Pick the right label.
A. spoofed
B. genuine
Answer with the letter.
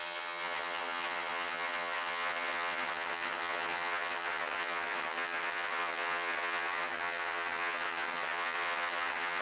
A